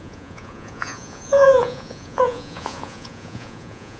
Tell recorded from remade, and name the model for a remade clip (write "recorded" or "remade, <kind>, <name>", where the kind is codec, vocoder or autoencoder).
remade, vocoder, Vocos